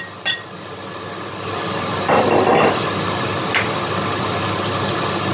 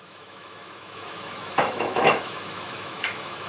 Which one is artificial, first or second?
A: second